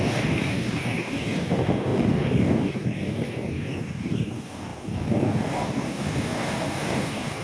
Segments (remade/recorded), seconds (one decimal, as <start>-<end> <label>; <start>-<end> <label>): 0.0-7.4 remade